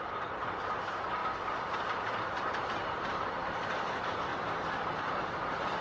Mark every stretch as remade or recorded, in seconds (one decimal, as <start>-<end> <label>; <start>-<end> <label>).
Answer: 0.0-1.2 remade; 1.2-2.2 recorded; 2.2-4.3 remade; 4.3-5.0 recorded; 5.0-5.8 remade